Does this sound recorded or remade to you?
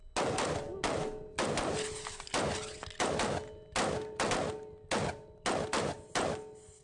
recorded